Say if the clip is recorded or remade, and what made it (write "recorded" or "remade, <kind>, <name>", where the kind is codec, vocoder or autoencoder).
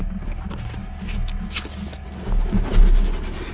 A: recorded